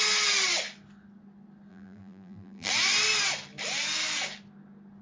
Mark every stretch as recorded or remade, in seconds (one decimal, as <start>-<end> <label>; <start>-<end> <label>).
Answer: 0.0-1.7 recorded; 1.7-2.7 remade; 2.7-5.0 recorded